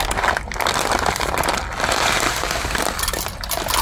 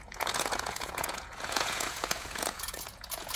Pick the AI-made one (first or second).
second